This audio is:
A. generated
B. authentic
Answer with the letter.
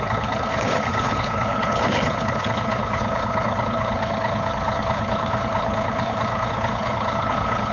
A